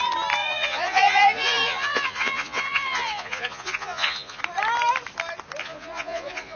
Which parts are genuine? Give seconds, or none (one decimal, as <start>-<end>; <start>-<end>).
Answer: 0.0-0.4; 4.4-5.6